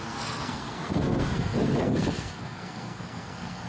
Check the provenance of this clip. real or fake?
fake